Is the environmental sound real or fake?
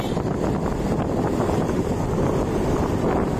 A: real